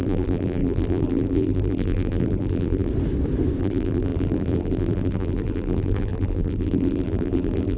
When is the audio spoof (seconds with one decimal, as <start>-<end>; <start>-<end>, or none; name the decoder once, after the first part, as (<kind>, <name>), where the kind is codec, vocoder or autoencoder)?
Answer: 0.0-2.9 (vocoder, BigVGAN v2); 3.6-7.8